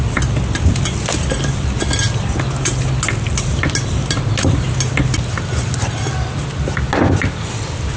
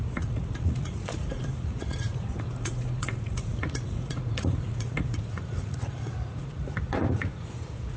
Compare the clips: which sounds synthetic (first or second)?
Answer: second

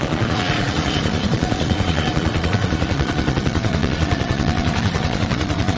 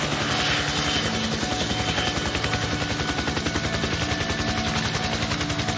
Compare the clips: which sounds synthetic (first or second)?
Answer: first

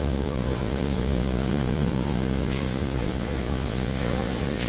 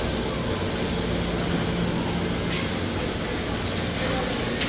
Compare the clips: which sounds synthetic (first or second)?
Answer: first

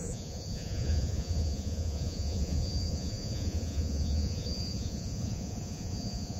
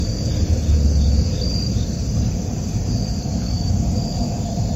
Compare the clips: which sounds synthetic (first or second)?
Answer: first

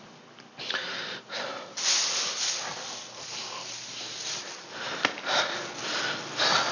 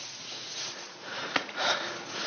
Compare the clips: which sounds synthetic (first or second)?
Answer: second